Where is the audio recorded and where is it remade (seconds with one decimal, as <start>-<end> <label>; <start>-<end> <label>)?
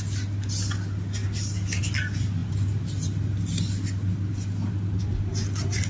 0.0-5.9 recorded